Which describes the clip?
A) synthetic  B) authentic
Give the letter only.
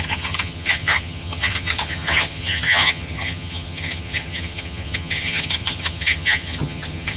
A